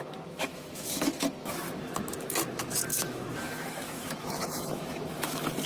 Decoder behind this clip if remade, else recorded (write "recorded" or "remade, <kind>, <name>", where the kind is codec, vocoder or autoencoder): remade, autoencoder, DAC-VAE